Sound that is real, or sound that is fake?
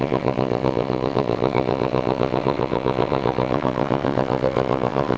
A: fake